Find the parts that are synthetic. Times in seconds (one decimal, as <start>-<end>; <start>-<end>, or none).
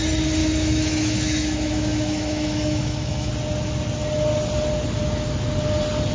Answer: 0.4-3.3